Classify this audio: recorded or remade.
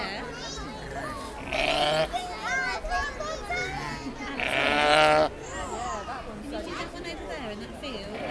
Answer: recorded